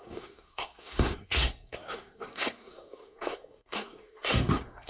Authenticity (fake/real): fake